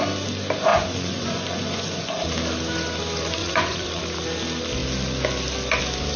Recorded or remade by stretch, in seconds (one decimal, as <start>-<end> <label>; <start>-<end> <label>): 0.0-0.7 recorded; 0.7-2.2 remade; 2.2-3.4 recorded; 3.4-4.0 remade; 4.0-6.2 recorded

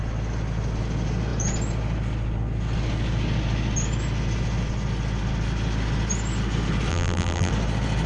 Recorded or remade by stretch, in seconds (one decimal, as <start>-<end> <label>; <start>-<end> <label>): 0.0-6.9 recorded; 6.9-7.5 remade; 7.5-8.1 recorded